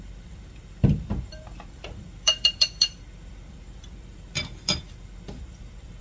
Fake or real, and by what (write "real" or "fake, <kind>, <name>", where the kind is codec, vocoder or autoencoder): fake, vocoder, BigVGAN v2